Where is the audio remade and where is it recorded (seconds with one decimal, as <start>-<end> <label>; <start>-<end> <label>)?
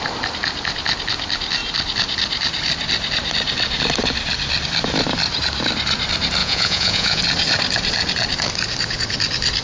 0.0-6.4 recorded; 6.4-7.2 remade; 7.2-9.6 recorded